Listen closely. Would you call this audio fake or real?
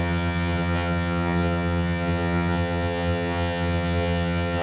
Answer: fake